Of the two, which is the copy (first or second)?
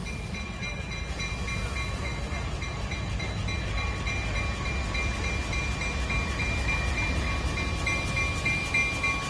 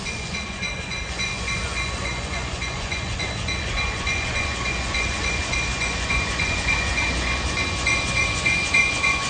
second